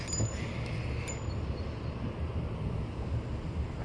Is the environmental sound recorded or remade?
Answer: recorded